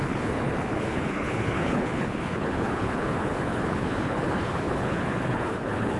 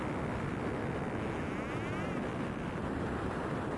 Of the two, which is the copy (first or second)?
first